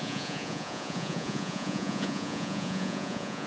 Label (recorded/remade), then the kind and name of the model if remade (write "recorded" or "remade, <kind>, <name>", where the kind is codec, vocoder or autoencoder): remade, vocoder, Vocos